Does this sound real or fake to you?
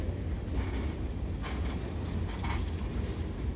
real